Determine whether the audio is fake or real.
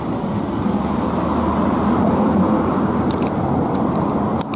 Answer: real